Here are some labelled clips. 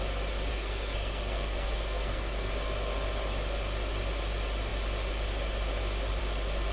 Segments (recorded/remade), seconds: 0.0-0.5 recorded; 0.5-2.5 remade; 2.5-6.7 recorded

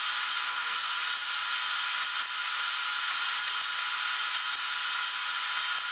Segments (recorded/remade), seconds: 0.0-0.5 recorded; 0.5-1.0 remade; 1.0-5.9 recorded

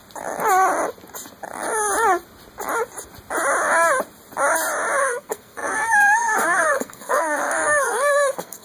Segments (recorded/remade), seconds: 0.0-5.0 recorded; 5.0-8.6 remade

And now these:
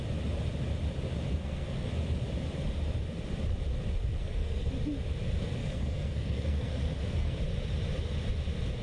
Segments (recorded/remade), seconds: 0.0-1.3 recorded; 1.3-1.9 remade; 1.9-4.2 recorded; 4.2-4.7 remade; 4.7-5.6 recorded; 5.6-7.4 remade; 7.4-8.8 recorded

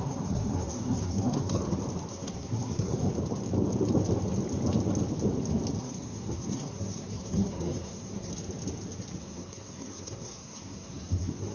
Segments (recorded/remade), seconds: 0.0-1.6 remade; 1.6-2.1 recorded; 2.1-3.1 remade; 3.1-5.8 recorded; 5.8-8.3 remade; 8.3-9.2 recorded; 9.2-11.5 remade